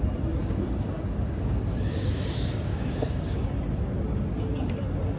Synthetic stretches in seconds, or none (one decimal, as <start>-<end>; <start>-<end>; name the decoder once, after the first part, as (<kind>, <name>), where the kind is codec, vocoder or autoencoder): 0.4-3.5 (codec, DAC)

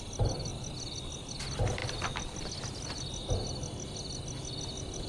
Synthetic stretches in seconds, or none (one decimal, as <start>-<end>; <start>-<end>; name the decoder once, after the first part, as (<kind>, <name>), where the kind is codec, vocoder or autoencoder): 0.5-1.4 (vocoder, BigVGAN v2); 1.8-2.5

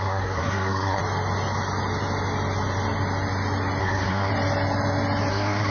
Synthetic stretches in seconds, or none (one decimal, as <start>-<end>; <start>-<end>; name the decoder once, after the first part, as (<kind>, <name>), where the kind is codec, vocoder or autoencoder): 0.0-1.0 (codec, SNAC); 3.8-4.3; 5.3-5.7

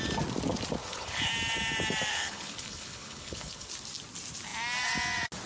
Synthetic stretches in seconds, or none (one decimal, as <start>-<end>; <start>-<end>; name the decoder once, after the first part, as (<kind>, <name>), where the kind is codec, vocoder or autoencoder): 0.8-1.3 (codec, HILCodec); 2.1-3.7

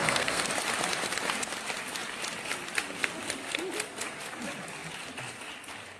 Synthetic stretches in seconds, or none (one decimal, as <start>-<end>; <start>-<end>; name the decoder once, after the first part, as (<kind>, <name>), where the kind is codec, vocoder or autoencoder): 0.0-0.5 (codec, SNAC)